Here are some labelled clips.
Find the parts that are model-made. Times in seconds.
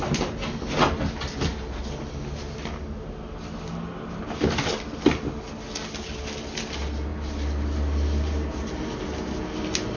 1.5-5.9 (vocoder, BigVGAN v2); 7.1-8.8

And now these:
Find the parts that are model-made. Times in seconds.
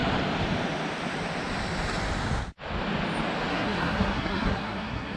3.5-5.2 (codec, SNAC)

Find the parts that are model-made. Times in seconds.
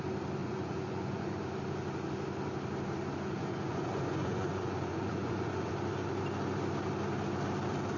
0.4-1.4 (vocoder, Vocos); 3.4-5.7